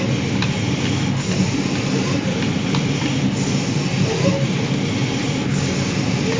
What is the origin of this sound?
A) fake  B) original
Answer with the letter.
B